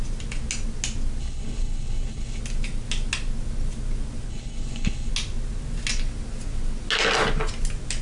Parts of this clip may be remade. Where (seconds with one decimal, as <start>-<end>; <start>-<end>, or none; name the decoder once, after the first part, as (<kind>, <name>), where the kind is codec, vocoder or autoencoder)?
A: 1.2-2.4 (codec, HILCodec); 4.3-5.1